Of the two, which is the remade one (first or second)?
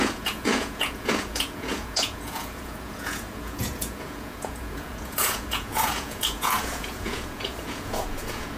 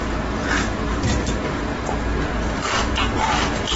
first